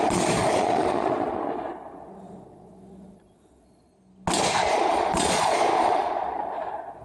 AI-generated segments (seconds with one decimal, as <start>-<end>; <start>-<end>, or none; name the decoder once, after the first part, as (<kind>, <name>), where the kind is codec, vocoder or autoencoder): 0.0-3.9 (vocoder, Vocos); 4.7-7.0

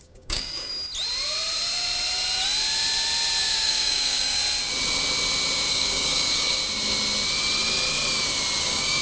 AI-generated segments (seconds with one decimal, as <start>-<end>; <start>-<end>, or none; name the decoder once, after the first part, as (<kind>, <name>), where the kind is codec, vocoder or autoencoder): 0.0-0.7 (codec, DAC); 3.4-4.4; 5.7-6.6; 8.6-9.0